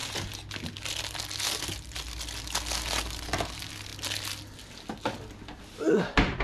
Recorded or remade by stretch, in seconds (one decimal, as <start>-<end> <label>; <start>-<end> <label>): 0.0-6.4 recorded

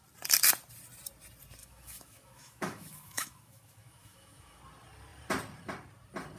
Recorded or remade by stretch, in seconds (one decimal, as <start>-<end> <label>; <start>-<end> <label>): 0.0-1.6 recorded; 1.6-4.6 remade; 4.6-6.4 recorded

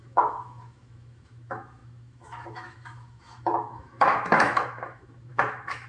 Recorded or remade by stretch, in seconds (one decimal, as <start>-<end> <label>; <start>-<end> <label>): 0.0-5.9 remade

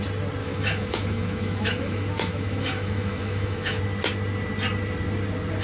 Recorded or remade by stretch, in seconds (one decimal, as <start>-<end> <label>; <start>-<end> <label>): 0.0-0.4 recorded; 0.4-3.8 remade; 3.8-5.6 recorded

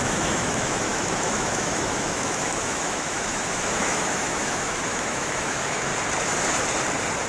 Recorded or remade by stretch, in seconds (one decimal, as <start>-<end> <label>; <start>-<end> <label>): 0.0-5.9 remade; 5.9-7.3 recorded

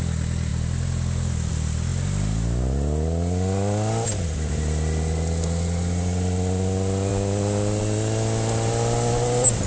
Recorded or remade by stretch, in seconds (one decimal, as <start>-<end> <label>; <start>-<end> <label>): 0.0-9.7 recorded

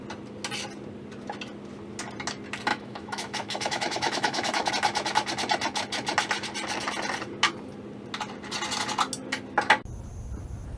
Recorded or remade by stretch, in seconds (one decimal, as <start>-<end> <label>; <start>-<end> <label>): 0.0-2.7 recorded; 2.7-4.7 remade; 4.7-10.8 recorded